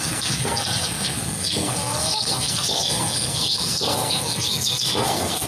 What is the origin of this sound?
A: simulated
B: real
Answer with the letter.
A